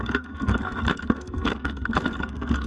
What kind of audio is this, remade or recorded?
remade